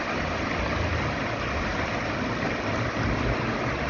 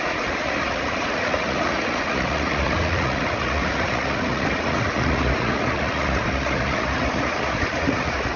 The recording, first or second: first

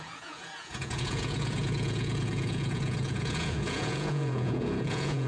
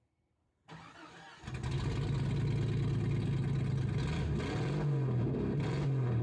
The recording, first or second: second